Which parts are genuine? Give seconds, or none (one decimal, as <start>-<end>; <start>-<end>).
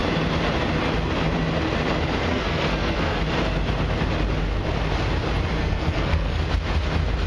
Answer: 0.0-2.3; 3.2-5.6; 6.4-7.3